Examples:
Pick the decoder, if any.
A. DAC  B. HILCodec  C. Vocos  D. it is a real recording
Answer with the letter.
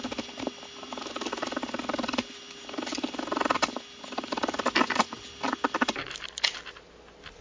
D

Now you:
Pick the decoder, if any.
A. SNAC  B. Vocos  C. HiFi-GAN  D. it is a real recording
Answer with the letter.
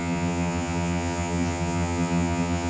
C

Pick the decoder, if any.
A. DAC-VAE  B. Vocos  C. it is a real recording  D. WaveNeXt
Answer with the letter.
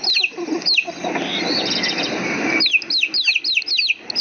C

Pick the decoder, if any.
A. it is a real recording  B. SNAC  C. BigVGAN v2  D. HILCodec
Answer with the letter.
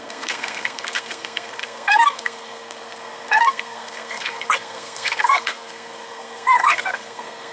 B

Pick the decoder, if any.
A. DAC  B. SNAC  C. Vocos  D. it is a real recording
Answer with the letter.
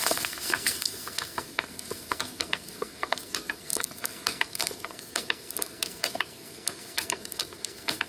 B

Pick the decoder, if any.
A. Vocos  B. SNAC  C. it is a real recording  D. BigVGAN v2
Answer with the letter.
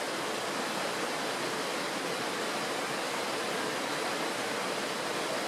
C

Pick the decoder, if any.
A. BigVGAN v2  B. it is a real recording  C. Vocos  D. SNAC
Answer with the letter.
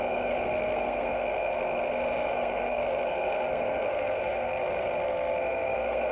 D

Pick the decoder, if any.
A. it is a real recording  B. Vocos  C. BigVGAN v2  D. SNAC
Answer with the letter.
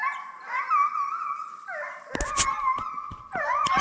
A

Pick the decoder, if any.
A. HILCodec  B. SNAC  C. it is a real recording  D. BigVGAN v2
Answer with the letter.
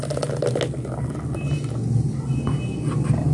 C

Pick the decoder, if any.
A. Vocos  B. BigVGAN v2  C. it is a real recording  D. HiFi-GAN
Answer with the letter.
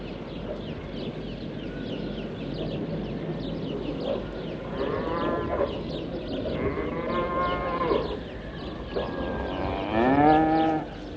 C